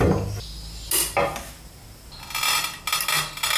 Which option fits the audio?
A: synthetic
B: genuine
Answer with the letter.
B